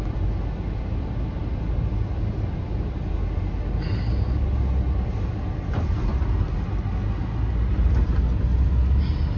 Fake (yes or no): no